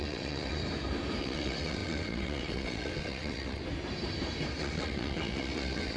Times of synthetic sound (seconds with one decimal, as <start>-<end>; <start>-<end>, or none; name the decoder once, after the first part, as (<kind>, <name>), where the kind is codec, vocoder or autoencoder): 0.0-0.6 (vocoder, WaveNeXt); 1.2-3.6; 4.6-6.0